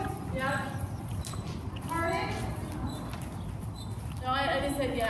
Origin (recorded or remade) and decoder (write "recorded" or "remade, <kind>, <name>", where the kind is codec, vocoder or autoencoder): recorded